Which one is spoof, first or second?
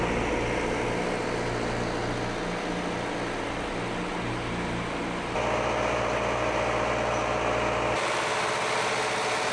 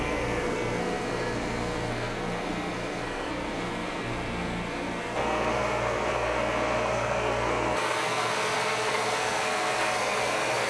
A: second